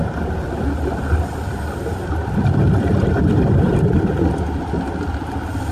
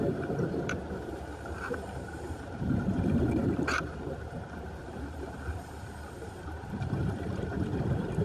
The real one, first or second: first